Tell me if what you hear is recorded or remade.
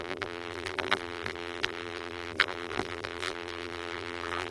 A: remade